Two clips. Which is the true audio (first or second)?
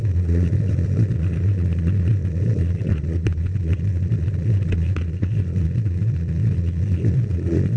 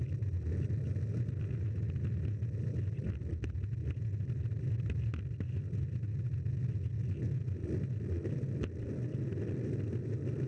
second